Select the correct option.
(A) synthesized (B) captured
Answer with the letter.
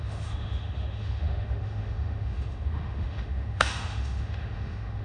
A